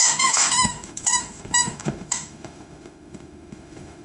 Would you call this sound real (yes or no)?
no